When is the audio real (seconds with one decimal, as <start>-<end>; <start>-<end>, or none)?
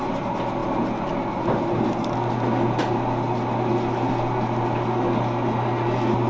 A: 0.0-6.3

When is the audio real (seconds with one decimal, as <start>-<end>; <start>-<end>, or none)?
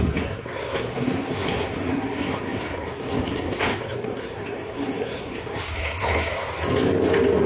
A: 6.5-7.5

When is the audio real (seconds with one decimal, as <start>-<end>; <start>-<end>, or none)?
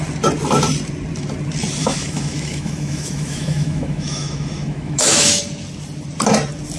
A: 0.0-1.8; 5.4-6.8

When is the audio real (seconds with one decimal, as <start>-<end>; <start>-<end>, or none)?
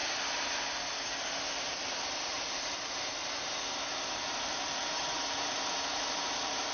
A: 0.0-1.5; 3.2-4.1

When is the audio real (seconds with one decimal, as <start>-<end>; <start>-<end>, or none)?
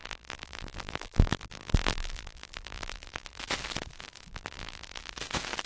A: 3.4-4.3; 5.0-5.7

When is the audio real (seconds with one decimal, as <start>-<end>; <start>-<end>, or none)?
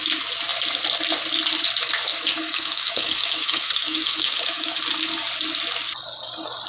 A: 0.0-2.1; 4.8-6.7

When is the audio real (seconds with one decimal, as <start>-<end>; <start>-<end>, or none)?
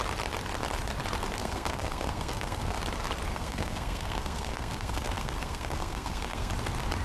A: 0.0-1.4; 2.8-3.3; 6.5-7.0